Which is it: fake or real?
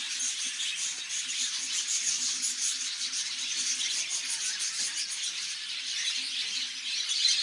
real